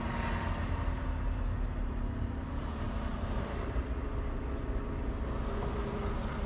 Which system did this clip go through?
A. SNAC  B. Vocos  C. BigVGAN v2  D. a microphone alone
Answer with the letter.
D